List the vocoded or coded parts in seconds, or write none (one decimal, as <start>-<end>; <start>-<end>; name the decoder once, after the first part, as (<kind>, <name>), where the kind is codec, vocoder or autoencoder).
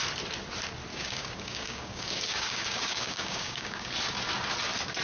0.9-3.9 (codec, DAC)